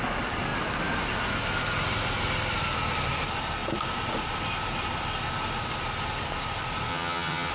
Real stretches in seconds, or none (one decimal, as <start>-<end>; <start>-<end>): 0.0-6.9